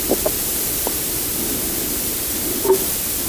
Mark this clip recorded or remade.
recorded